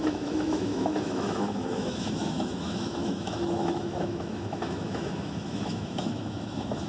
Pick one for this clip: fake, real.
fake